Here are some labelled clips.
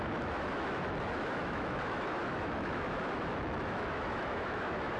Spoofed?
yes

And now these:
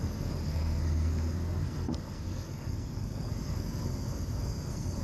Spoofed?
yes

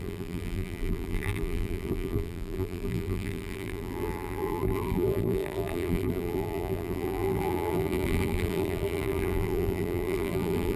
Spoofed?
yes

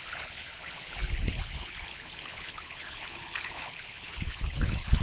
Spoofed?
yes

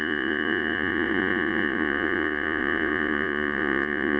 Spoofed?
yes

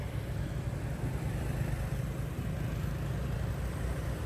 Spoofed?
no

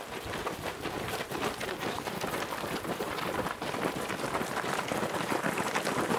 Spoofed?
no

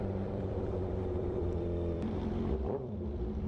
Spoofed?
yes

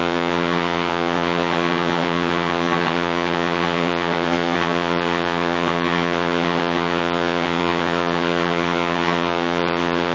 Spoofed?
yes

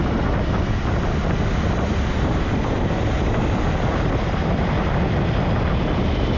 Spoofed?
no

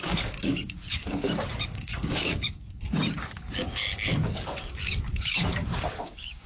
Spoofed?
yes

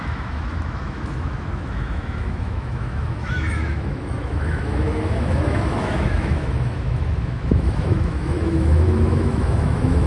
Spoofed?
yes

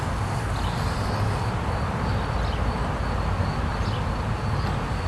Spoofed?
no